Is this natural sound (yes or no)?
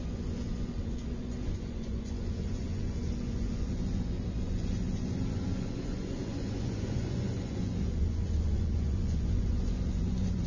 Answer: no